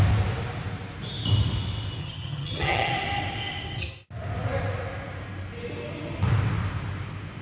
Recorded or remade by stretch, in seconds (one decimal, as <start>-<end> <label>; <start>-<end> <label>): 0.0-2.0 recorded; 2.0-2.9 remade; 2.9-7.4 recorded